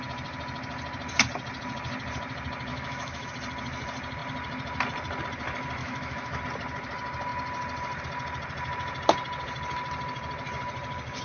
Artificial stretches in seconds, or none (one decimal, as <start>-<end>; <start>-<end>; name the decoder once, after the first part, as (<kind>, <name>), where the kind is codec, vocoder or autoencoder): 2.7-3.3 (autoencoder, DAC-VAE); 5.8-6.4